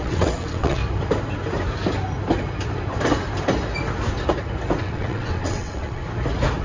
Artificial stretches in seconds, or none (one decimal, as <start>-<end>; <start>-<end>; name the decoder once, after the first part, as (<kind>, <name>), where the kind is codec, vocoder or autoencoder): 0.0-0.8 (vocoder, WaveNeXt); 4.8-6.0